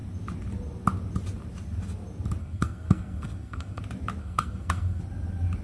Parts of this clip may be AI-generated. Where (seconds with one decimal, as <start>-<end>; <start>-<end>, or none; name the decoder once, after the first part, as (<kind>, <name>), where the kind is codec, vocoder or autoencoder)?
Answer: 2.4-3.8 (codec, SNAC); 4.2-5.0